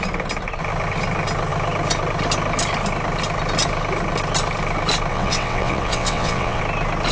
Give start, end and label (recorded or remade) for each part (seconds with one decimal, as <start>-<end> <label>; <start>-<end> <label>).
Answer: 0.0-5.1 recorded; 5.1-6.6 remade; 6.6-7.1 recorded